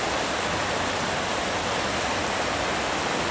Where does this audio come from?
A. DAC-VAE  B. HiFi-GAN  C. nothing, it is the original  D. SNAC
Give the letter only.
C